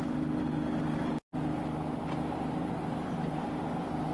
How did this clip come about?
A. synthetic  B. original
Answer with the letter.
B